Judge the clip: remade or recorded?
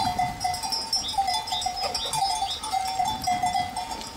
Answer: recorded